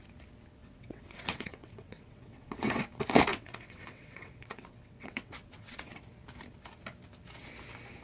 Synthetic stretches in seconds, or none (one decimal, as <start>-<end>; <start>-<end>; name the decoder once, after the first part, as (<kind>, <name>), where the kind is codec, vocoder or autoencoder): 0.6-2.8 (vocoder, WaveNeXt); 3.3-6.0